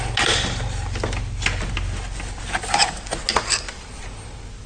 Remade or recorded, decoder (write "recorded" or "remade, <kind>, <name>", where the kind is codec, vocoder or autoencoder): recorded